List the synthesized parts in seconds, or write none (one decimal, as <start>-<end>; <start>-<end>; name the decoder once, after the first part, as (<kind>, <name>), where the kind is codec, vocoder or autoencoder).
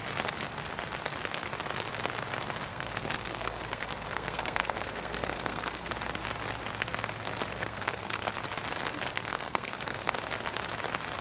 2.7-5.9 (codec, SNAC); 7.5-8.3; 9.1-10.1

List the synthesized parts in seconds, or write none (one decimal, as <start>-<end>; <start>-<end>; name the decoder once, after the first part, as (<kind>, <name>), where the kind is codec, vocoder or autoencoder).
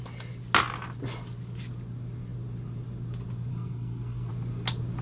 3.5-4.3 (codec, SNAC)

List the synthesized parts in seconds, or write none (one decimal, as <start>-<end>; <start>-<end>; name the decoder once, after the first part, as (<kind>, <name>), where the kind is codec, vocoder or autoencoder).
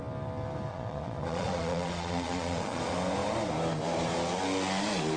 0.7-2.8 (vocoder, Vocos)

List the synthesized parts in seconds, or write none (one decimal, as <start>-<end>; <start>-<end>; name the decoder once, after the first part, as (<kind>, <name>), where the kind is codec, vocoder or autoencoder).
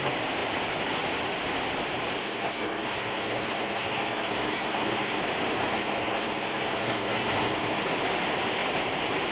2.2-5.2 (codec, SNAC); 5.7-7.8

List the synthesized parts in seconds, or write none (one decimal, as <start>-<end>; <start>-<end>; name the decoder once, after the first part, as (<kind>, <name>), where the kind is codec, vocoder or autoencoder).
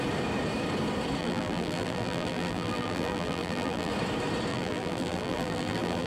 1.2-3.9 (vocoder, BigVGAN v2); 4.5-6.1